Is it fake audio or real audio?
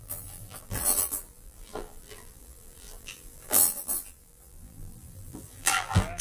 fake